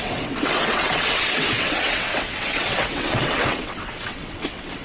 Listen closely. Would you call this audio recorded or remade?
remade